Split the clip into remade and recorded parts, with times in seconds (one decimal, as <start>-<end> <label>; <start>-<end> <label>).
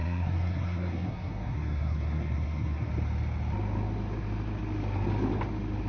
0.0-2.9 remade; 2.9-5.9 recorded